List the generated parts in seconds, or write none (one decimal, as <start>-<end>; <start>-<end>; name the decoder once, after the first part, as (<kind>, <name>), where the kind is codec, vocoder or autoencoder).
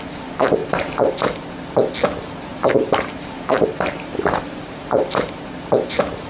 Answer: 0.6-1.4 (vocoder, BigVGAN v2); 2.5-6.3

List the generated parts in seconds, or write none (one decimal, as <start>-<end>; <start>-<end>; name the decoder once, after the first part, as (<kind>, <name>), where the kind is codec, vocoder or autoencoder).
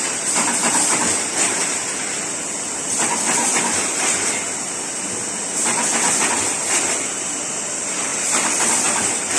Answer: none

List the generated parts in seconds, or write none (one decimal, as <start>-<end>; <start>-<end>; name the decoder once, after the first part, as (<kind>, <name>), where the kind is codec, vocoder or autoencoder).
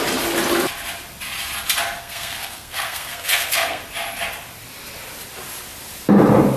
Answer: 2.0-3.8 (codec, SNAC)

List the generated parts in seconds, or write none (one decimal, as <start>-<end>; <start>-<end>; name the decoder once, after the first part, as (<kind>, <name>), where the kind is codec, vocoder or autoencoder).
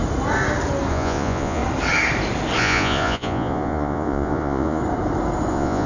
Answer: 0.9-1.6 (vocoder, Vocos); 2.6-4.8; 5.5-5.9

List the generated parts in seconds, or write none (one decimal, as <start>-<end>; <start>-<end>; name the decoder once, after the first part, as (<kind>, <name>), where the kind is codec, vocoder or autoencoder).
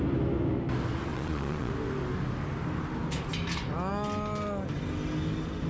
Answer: 1.1-1.7 (vocoder, Vocos)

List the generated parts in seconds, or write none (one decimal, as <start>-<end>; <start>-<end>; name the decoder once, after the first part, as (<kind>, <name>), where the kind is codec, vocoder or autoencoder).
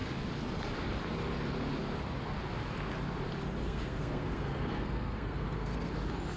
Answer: 3.6-5.9 (codec, SNAC)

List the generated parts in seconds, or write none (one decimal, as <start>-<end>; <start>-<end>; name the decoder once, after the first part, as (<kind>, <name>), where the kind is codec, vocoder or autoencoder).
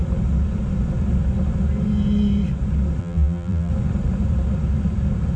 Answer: 3.0-3.7 (vocoder, BigVGAN v2)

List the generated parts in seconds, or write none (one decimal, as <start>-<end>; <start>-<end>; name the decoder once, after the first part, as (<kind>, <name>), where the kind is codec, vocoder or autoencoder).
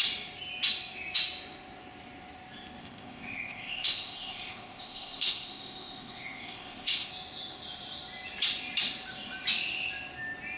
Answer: 2.8-7.1 (codec, ZipCodec)